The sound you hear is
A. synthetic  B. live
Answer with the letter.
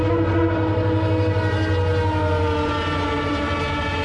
B